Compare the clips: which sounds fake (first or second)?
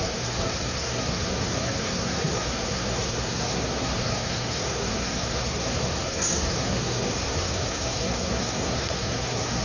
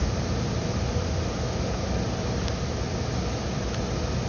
first